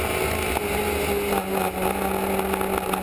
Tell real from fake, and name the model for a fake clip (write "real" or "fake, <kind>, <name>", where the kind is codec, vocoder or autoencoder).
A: real